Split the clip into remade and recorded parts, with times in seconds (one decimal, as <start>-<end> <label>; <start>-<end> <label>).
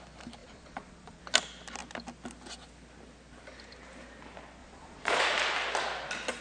0.0-0.4 recorded; 0.4-1.2 remade; 1.2-4.6 recorded; 4.6-5.2 remade; 5.2-6.4 recorded